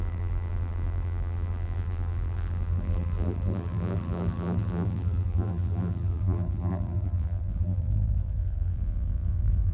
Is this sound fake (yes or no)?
yes